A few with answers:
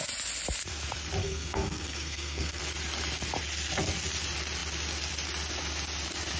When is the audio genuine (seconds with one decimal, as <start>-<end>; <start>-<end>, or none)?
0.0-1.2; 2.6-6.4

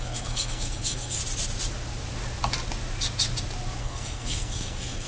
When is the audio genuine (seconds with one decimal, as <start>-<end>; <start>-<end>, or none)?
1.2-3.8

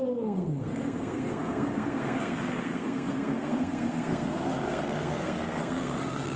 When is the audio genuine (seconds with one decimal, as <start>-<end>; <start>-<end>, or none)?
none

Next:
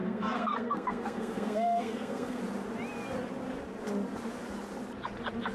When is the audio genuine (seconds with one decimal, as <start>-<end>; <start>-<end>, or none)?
2.4-5.5